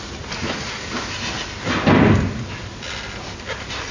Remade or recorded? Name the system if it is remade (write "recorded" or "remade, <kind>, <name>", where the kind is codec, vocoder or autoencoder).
recorded